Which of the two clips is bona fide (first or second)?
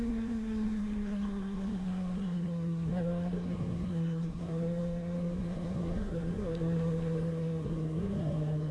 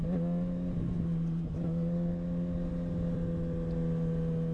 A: second